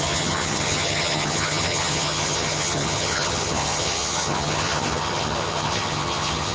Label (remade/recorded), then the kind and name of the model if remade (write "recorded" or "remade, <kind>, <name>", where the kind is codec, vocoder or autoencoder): remade, vocoder, HiFi-GAN